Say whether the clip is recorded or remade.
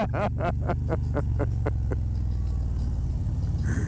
recorded